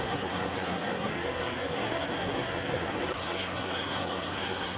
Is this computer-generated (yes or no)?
yes